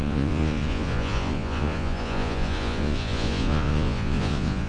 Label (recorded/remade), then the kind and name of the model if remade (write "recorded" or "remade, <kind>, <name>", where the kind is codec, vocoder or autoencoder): remade, vocoder, Vocos